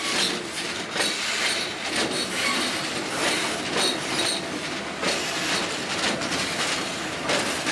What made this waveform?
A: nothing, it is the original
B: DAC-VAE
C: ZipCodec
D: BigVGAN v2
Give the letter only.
A